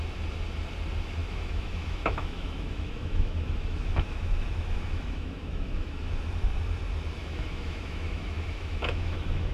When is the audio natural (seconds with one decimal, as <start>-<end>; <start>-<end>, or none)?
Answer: 0.0-1.2; 6.1-7.2